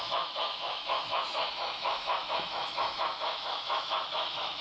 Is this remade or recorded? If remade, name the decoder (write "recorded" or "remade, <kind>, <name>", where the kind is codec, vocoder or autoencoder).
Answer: remade, autoencoder, DAC-VAE